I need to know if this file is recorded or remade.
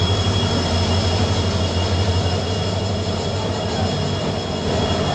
recorded